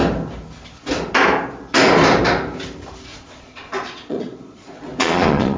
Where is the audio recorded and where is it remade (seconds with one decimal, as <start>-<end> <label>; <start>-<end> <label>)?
0.0-3.1 recorded; 3.1-5.6 remade